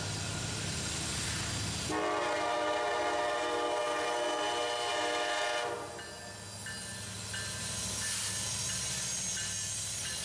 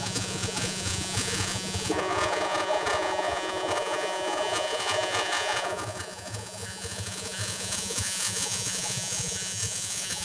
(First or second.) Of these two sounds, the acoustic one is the first